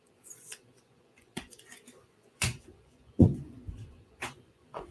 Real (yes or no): no